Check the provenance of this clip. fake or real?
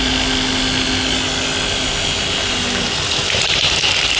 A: real